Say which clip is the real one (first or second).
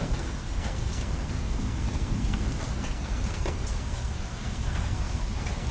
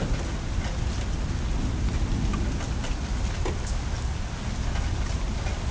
second